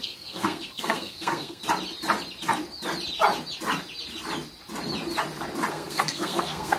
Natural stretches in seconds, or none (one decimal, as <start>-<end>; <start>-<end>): 1.6-5.7